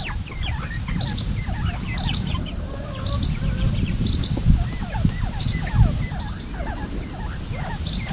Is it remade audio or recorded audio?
recorded